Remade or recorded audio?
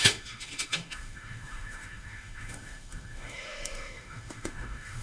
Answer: remade